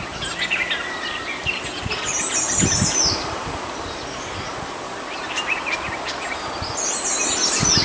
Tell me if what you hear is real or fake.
real